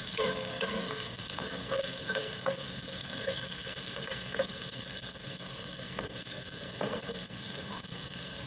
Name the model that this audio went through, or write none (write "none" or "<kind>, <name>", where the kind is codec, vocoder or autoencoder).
codec, SNAC